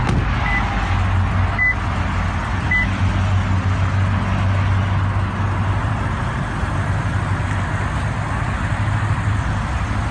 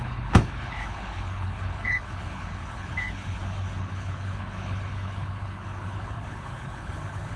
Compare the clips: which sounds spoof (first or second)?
second